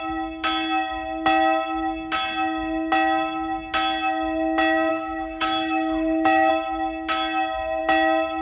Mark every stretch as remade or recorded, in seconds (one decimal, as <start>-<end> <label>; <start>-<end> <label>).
0.0-4.9 recorded; 4.9-6.5 remade; 6.5-8.4 recorded